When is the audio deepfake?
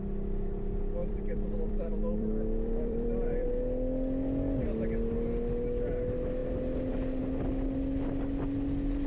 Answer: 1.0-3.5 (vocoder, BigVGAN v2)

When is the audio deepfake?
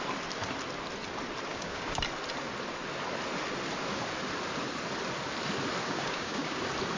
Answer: 1.5-2.0 (codec, DAC); 5.8-6.6